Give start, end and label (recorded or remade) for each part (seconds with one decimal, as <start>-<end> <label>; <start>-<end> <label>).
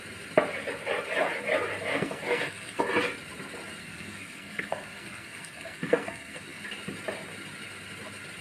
0.0-1.9 recorded; 1.9-2.8 remade; 2.8-3.8 recorded; 3.8-6.6 remade; 6.6-8.4 recorded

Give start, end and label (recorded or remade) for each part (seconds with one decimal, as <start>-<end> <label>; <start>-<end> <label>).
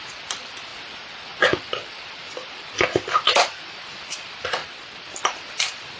0.0-6.0 recorded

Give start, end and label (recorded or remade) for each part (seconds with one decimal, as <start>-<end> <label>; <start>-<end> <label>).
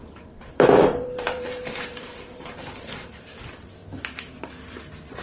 0.0-3.1 remade; 3.1-5.2 recorded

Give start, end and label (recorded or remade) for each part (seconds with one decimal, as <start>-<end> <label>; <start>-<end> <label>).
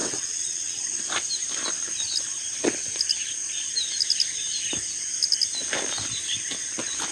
0.0-0.8 remade; 0.8-7.1 recorded